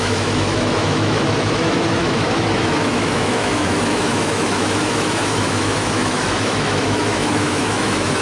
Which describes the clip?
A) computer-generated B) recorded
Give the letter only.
A